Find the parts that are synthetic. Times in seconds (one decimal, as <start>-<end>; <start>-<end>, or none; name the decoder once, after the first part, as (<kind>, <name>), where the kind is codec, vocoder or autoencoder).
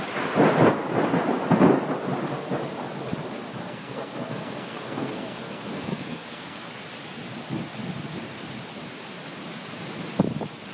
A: 3.6-6.7 (codec, SNAC)